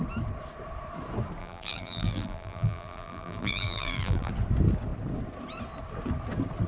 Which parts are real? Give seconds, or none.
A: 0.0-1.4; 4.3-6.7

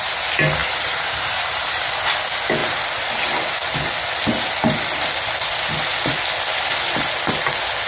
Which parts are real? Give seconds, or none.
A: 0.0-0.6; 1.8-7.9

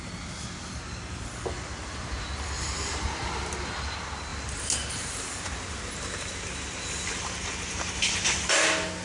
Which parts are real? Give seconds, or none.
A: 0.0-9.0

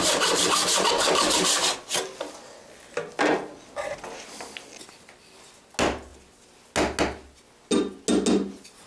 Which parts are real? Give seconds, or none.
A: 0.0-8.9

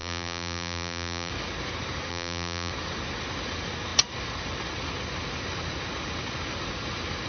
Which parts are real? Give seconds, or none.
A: 1.3-2.1; 2.7-7.3

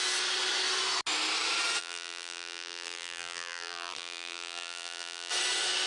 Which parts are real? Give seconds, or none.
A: 0.0-1.8; 5.3-5.9